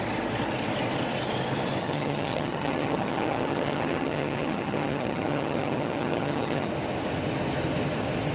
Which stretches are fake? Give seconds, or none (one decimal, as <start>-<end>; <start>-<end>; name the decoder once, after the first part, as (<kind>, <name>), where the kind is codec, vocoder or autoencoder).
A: 1.8-6.7 (vocoder, HiFi-GAN)